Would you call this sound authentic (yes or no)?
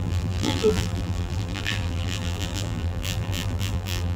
no